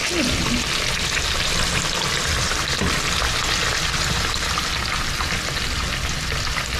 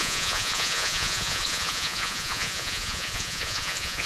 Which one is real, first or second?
first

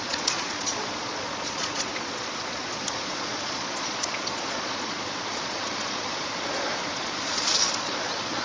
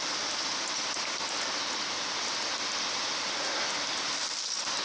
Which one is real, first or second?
second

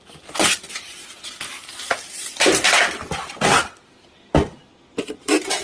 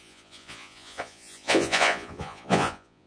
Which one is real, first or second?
first